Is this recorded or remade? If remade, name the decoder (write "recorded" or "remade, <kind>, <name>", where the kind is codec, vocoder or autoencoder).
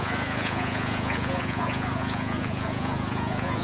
remade, vocoder, Vocos